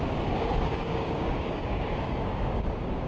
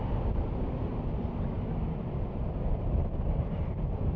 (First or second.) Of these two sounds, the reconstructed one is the first